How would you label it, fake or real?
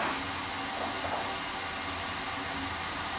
real